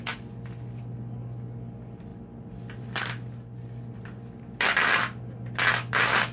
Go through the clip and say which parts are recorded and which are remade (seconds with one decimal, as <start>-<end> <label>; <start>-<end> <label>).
0.0-6.3 recorded